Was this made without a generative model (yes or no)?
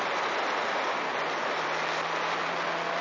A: yes